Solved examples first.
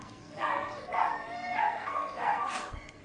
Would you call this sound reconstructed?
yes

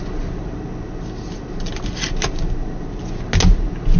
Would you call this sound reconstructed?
no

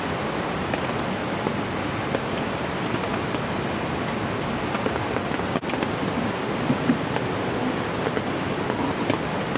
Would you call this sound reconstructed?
no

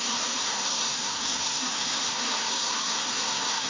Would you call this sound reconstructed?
yes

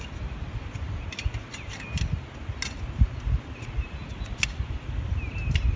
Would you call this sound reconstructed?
no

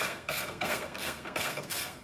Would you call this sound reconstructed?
yes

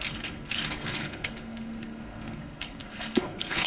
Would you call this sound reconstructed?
yes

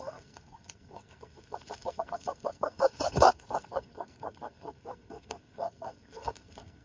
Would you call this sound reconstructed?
yes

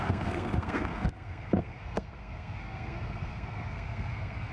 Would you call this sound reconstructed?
yes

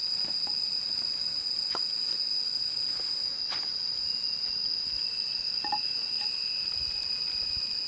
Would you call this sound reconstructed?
no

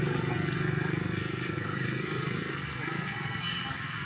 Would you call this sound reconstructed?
yes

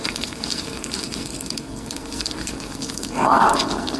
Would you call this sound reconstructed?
yes